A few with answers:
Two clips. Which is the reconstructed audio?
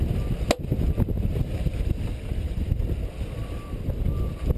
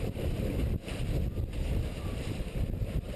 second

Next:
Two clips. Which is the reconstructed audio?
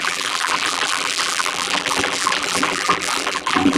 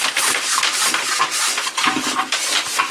first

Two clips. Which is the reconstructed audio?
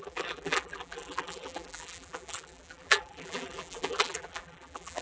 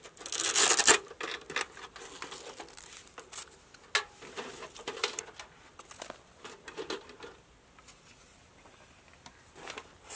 first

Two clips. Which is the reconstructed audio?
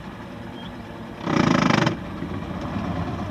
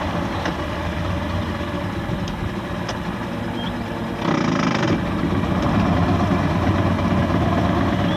first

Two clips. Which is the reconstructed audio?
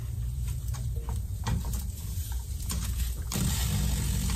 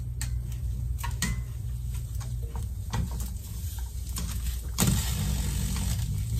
first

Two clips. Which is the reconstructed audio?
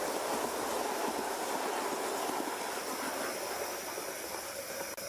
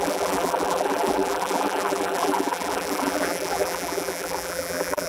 second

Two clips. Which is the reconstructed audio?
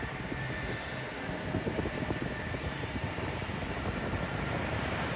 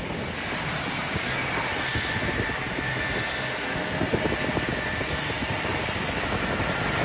first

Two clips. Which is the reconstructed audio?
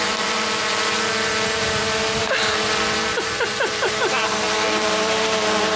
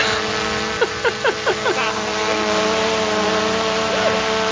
first